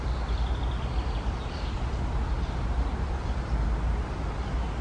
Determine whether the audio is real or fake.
real